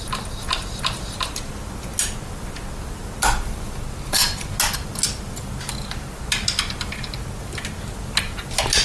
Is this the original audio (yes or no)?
yes